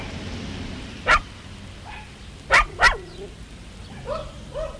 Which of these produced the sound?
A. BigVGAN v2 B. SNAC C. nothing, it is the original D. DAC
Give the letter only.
C